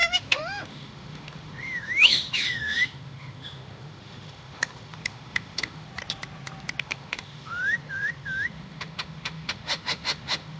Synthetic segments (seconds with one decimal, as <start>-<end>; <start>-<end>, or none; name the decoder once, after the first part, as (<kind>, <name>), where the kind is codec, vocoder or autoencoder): 0.0-5.9 (autoencoder, DAC-VAE); 6.8-10.6

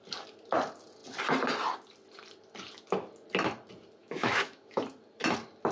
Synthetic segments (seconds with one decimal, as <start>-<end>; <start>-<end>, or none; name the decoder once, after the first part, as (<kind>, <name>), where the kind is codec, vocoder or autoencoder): 4.0-4.8 (autoencoder, DAC-VAE)

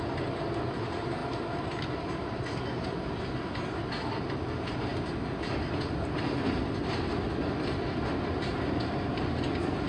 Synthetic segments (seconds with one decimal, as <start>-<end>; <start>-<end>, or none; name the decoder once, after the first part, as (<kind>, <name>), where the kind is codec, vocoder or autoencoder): none

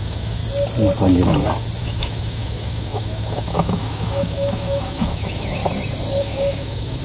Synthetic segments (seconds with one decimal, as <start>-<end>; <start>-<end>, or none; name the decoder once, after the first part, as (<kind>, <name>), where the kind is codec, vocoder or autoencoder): 0.0-0.4 (autoencoder, DAC-VAE); 1.8-5.6; 6.2-7.0

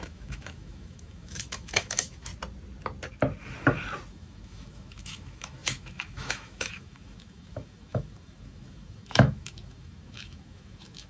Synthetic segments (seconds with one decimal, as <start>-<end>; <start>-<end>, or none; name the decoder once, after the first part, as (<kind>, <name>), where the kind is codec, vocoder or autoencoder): 0.0-2.3 (autoencoder, DAC-VAE); 4.1-11.1

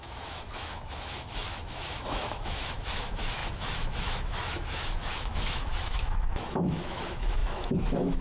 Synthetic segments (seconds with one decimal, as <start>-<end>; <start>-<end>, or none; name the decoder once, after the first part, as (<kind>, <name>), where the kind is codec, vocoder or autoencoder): 0.0-8.2 (autoencoder, DAC-VAE)

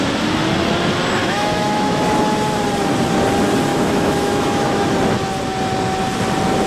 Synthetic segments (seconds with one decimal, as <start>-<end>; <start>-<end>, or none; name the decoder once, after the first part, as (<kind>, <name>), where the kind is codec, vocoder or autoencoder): 1.2-2.0 (autoencoder, DAC-VAE); 3.7-4.9

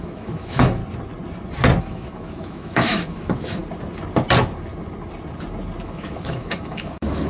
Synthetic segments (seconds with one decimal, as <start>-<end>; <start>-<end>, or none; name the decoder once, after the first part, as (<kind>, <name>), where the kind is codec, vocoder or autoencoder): 0.0-0.8 (autoencoder, DAC-VAE); 1.8-3.6; 5.8-7.3